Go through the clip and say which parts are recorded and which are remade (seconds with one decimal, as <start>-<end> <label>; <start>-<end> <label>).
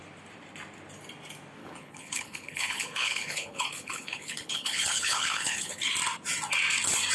0.0-1.6 recorded; 1.6-5.9 remade; 5.9-7.1 recorded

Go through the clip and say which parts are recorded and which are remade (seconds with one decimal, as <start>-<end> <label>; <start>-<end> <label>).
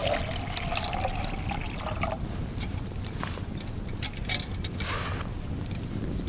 0.0-6.3 recorded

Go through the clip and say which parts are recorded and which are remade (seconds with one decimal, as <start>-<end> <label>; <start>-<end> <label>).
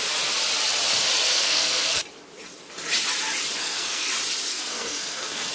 0.0-1.3 recorded; 1.3-2.0 remade; 2.0-3.6 recorded; 3.6-4.1 remade; 4.1-4.5 recorded; 4.5-5.5 remade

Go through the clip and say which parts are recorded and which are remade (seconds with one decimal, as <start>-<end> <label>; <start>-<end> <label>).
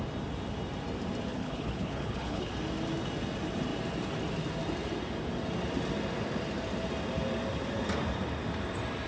0.0-1.3 recorded; 1.3-2.5 remade; 2.5-9.1 recorded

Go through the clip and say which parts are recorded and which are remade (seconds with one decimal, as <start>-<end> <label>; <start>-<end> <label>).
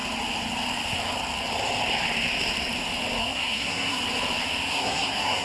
0.0-3.2 recorded; 3.2-4.0 remade; 4.0-4.7 recorded; 4.7-5.4 remade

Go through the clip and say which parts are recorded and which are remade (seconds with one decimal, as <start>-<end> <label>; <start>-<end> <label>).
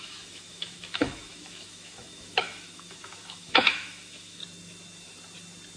0.0-4.4 remade; 4.4-5.8 recorded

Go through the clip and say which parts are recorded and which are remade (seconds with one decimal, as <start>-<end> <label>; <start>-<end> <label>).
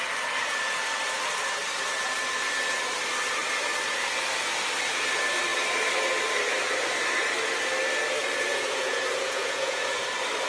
0.0-8.2 recorded; 8.2-10.0 remade; 10.0-10.5 recorded